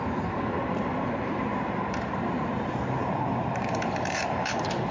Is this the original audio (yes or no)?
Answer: no